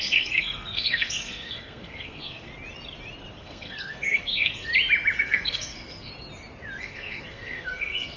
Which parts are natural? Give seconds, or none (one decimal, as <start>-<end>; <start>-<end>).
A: 2.5-3.4; 4.7-5.2; 6.1-6.8